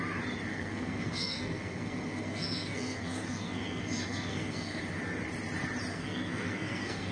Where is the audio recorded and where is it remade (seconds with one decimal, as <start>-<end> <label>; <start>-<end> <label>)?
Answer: 0.0-0.5 recorded; 0.5-4.8 remade; 4.8-5.9 recorded; 5.9-7.1 remade